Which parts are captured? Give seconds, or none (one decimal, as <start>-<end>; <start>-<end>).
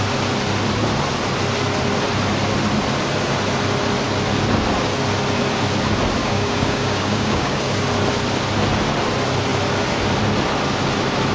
0.0-6.2; 7.6-11.3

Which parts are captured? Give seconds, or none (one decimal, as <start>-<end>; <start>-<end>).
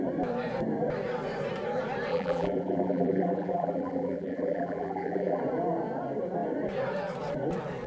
0.0-2.1; 5.4-7.9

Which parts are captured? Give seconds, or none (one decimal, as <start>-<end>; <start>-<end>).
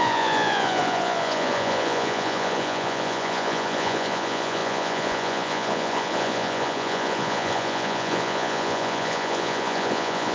none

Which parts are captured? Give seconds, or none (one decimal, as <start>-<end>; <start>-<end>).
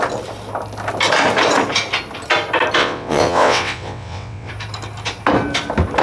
0.0-2.8; 4.5-6.0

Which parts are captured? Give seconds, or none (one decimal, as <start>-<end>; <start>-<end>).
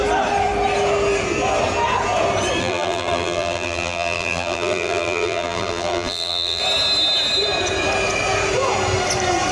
0.0-2.6; 6.6-9.5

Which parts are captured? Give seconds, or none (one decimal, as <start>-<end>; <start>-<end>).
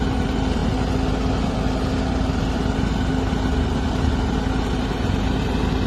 0.0-5.9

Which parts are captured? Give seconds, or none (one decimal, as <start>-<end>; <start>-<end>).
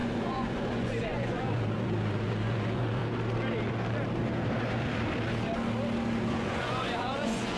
3.0-6.2